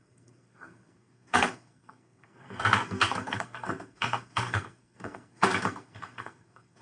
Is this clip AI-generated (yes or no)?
yes